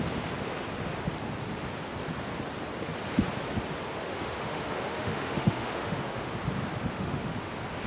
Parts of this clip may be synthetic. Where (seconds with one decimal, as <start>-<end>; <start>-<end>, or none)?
4.0-6.3; 6.8-7.5